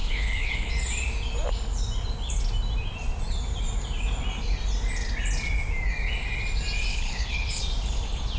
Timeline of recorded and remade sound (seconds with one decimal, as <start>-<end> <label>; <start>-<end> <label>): 0.0-0.7 remade; 0.7-6.9 recorded; 6.9-7.6 remade; 7.6-8.4 recorded